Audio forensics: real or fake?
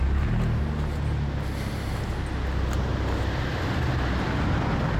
real